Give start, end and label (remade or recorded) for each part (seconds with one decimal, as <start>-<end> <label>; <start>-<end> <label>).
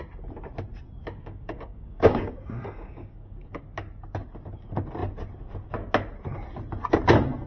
0.0-1.2 recorded; 1.2-3.6 remade; 3.6-7.5 recorded